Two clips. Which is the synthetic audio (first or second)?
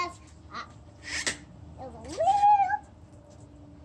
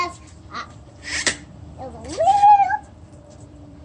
second